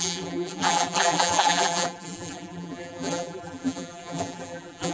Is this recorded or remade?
remade